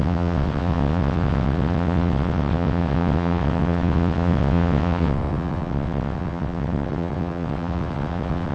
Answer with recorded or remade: remade